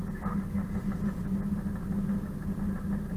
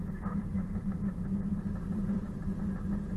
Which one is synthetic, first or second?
second